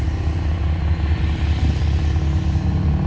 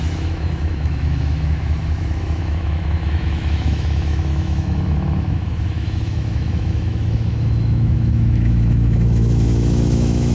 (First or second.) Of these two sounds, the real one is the first